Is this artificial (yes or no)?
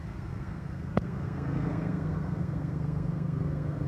yes